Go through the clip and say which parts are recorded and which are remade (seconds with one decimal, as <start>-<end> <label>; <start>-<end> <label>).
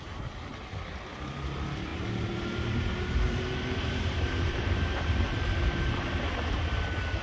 0.0-1.9 recorded; 1.9-6.2 remade; 6.2-7.2 recorded